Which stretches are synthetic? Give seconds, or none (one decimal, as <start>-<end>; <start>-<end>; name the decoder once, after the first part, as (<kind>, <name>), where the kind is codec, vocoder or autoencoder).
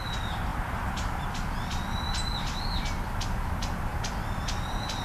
none